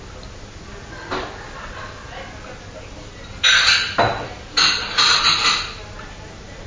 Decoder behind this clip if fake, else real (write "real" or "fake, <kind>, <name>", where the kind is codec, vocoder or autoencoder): real